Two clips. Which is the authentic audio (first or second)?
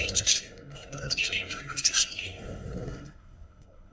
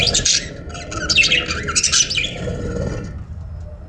second